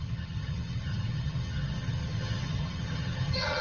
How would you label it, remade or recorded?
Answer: remade